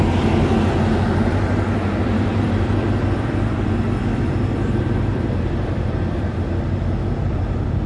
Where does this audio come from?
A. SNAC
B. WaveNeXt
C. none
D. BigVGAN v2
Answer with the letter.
D